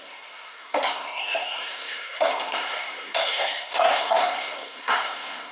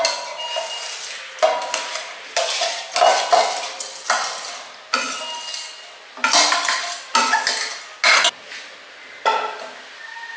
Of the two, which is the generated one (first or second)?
first